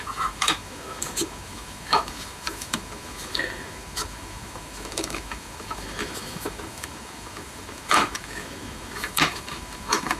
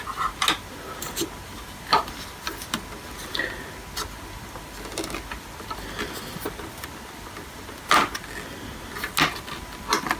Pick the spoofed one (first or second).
first